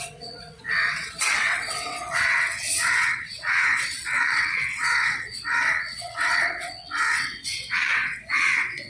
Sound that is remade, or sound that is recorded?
remade